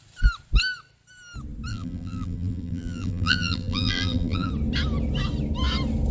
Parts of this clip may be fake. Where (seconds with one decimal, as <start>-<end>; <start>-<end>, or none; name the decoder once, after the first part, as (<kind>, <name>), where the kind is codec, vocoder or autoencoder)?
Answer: 1.7-4.5 (vocoder, BigVGAN v2)

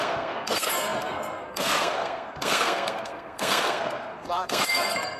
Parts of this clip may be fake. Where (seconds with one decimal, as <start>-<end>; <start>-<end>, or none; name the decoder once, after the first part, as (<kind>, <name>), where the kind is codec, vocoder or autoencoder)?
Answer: 0.0-5.2 (codec, SNAC)

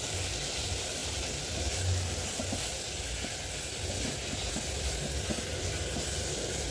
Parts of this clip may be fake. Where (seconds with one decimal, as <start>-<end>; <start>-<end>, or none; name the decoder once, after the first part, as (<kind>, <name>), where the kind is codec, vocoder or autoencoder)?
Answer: none

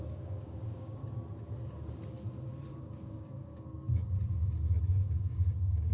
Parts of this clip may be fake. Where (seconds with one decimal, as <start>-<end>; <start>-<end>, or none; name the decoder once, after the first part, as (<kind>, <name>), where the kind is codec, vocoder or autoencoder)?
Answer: 0.0-1.0 (codec, DAC); 2.7-4.0; 4.9-5.9

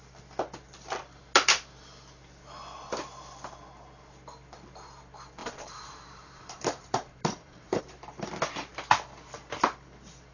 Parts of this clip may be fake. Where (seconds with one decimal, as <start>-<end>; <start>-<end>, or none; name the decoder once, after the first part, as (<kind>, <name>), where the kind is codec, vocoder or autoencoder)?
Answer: 5.4-7.8 (vocoder, BigVGAN v2)

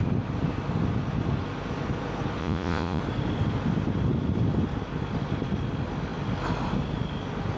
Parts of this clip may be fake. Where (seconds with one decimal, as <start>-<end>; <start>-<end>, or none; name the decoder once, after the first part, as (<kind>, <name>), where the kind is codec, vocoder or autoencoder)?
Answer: 2.4-3.0 (vocoder, Vocos)

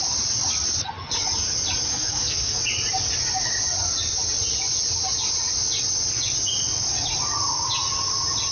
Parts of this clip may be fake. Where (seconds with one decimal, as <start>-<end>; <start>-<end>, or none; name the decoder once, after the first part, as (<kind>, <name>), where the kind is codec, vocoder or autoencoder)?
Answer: 1.9-2.6 (codec, SNAC)